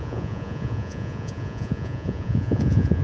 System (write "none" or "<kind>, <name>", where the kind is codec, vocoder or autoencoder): vocoder, Vocos